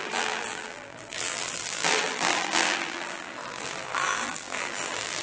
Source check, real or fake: fake